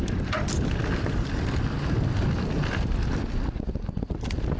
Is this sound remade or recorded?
recorded